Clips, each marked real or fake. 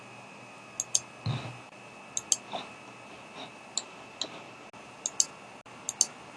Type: real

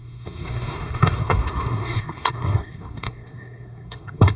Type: fake